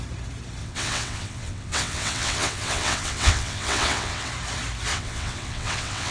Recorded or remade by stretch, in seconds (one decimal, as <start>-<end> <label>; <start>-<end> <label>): 0.0-0.6 recorded; 0.6-4.3 remade; 4.3-4.9 recorded; 4.9-6.1 remade